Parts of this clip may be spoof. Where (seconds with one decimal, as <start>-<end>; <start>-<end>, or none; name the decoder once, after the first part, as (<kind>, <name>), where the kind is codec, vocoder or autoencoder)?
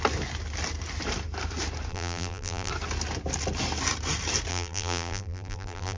1.9-2.7 (vocoder, BigVGAN v2); 4.5-6.0